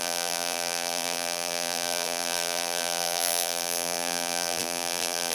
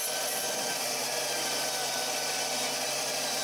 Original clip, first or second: second